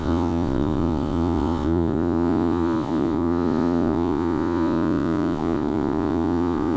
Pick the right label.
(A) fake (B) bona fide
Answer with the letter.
A